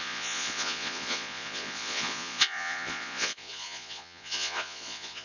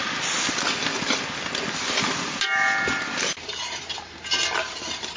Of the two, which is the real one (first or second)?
second